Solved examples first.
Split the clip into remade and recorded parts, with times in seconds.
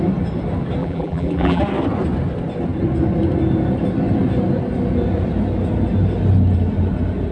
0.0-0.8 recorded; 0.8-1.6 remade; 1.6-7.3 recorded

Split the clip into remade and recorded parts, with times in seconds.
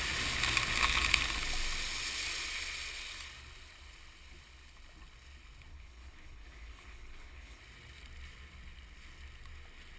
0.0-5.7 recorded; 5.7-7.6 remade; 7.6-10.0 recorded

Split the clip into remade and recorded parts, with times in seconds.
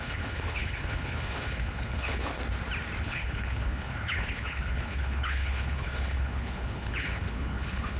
0.0-2.3 remade; 2.3-3.0 recorded; 3.0-8.0 remade